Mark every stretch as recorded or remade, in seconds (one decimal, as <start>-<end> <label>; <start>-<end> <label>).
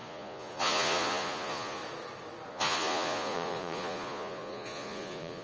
0.0-1.8 remade; 1.8-2.5 recorded; 2.5-5.4 remade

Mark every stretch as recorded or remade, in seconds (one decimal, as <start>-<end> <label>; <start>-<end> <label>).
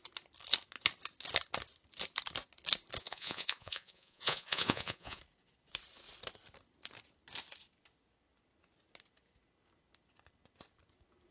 0.0-3.0 recorded; 3.0-5.2 remade; 5.2-11.3 recorded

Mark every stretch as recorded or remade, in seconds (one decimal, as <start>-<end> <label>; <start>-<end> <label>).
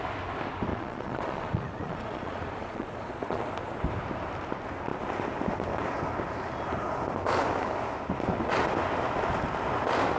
0.0-0.7 recorded; 0.7-3.5 remade; 3.5-10.2 recorded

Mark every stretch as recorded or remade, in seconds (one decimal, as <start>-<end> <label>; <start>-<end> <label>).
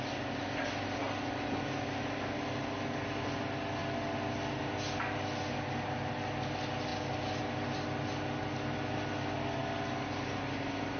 0.0-11.0 recorded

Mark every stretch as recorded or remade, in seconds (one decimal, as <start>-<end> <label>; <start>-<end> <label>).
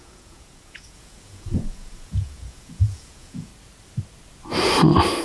0.0-3.5 remade; 3.5-5.2 recorded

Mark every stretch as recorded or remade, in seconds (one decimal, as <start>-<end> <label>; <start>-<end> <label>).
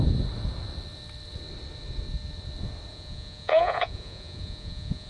0.0-2.9 recorded; 2.9-5.1 remade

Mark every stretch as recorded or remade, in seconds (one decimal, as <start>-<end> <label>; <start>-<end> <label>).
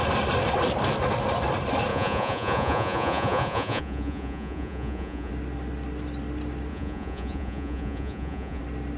0.0-1.9 recorded; 1.9-5.3 remade; 5.3-6.7 recorded; 6.7-8.6 remade; 8.6-9.0 recorded